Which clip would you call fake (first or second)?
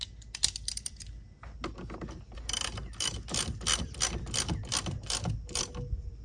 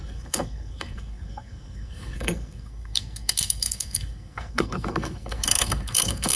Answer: second